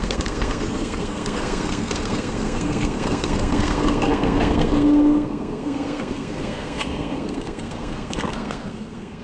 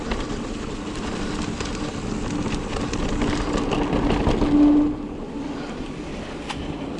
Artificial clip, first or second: first